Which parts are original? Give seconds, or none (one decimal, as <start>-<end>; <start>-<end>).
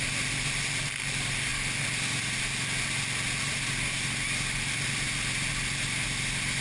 0.0-6.6